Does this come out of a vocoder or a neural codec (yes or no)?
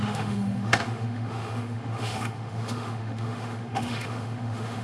yes